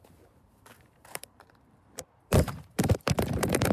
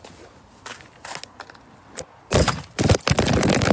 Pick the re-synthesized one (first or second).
first